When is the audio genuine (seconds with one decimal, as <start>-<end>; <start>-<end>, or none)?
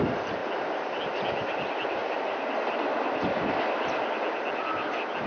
0.0-5.3